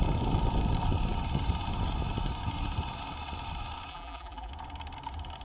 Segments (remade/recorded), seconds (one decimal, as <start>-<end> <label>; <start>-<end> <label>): 0.0-3.9 recorded; 3.9-4.5 remade; 4.5-5.4 recorded